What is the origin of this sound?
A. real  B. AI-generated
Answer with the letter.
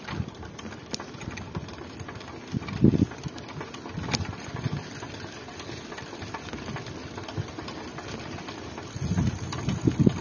A